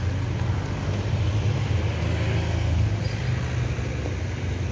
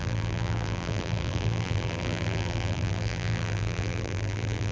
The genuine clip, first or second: first